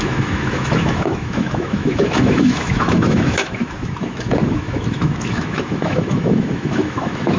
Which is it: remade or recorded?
remade